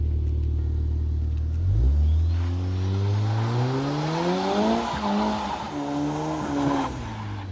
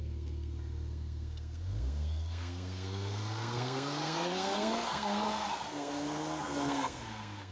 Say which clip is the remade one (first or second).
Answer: second